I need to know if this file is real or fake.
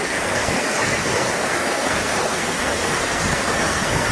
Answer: fake